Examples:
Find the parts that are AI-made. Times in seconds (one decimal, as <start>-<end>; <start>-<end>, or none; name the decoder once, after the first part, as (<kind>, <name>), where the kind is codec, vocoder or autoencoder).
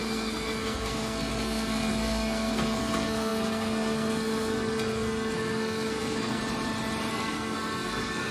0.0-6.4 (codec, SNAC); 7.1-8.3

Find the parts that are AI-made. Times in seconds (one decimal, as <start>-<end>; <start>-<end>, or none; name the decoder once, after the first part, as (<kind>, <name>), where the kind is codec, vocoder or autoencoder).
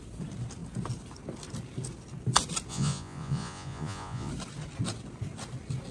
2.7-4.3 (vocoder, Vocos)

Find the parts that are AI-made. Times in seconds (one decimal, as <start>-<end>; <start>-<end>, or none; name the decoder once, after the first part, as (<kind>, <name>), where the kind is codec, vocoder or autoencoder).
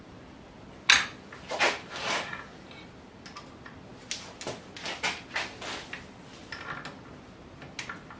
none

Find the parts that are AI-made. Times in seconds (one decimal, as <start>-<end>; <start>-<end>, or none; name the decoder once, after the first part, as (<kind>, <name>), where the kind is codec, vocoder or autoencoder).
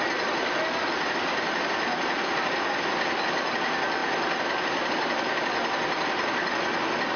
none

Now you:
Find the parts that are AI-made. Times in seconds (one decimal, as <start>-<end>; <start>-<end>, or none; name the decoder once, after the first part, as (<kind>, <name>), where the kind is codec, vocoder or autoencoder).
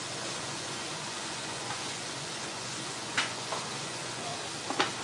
0.0-4.3 (vocoder, Vocos)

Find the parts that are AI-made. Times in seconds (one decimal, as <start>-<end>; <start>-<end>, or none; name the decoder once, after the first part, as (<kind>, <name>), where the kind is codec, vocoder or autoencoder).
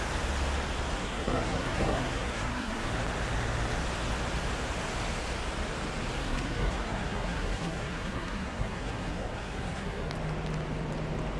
1.0-2.9 (codec, SNAC); 6.2-10.1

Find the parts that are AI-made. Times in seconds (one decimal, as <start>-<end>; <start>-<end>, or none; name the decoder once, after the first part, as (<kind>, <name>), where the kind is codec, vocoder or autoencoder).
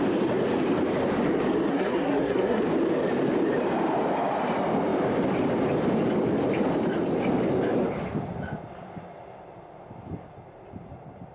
1.7-2.6 (codec, SNAC)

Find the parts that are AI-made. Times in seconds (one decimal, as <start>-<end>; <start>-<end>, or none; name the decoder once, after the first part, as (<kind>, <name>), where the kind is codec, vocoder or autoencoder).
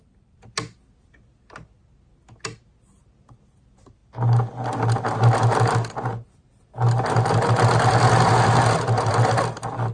none